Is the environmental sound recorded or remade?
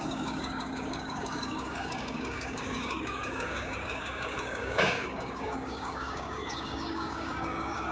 remade